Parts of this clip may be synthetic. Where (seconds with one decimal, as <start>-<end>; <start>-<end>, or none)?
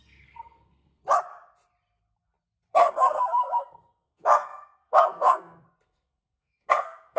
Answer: 0.0-1.0; 2.7-7.2